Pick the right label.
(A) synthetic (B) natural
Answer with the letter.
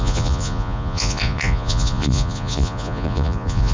A